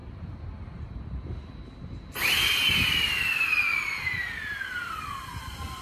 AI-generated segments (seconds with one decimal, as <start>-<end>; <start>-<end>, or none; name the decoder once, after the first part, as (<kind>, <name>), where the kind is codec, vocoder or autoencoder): 0.0-3.1 (vocoder, BigVGAN v2)